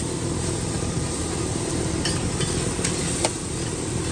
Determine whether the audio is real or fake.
real